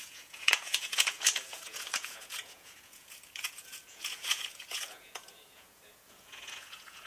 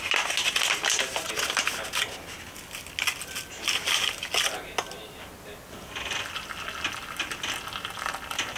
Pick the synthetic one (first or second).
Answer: first